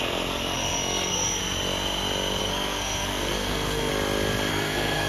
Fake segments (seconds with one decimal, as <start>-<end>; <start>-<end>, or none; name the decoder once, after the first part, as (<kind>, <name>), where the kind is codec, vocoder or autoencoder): 0.0-1.4 (codec, SNAC); 2.4-3.9; 4.5-5.1